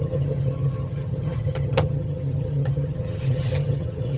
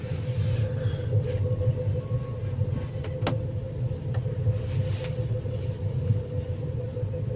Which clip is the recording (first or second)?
second